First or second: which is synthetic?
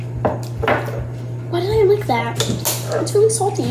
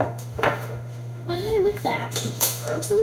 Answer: second